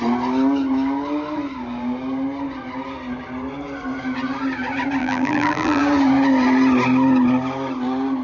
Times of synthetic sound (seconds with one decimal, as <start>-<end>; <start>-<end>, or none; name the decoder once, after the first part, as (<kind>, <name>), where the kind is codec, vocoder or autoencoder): 5.0-5.8 (vocoder, BigVGAN v2)